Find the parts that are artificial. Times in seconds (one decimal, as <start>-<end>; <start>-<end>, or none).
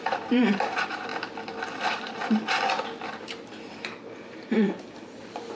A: 0.0-1.1; 1.8-2.2; 3.2-5.6